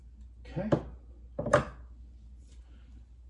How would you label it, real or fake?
real